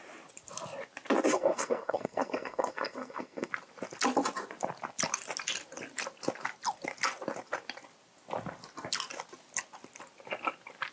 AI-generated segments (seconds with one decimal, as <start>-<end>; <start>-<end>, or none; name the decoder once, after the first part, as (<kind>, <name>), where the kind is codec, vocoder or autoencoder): 1.3-3.5 (codec, SNAC)